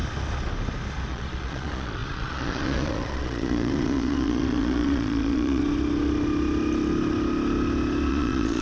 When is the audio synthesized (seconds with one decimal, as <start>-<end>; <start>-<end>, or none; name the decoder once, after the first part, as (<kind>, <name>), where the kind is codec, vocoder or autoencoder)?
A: 1.1-5.6 (vocoder, Vocos); 8.1-8.6